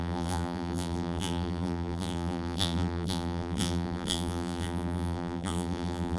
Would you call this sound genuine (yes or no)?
no